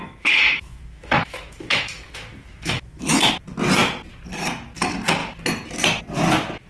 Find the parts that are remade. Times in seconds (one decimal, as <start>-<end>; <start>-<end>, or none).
0.0-3.3